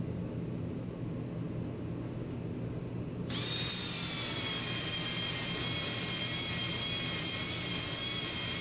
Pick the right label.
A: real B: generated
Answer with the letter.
A